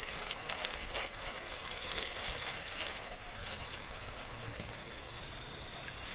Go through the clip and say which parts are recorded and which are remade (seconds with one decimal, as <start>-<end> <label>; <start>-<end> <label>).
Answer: 0.0-5.2 remade; 5.2-6.1 recorded